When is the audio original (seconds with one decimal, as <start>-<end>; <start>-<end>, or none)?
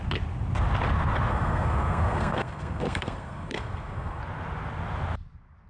0.0-1.3; 4.2-5.7